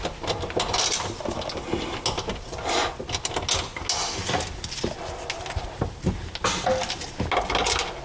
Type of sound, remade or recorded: recorded